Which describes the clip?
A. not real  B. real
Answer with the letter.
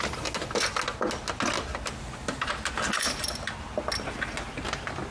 B